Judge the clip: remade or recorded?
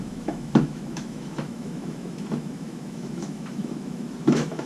remade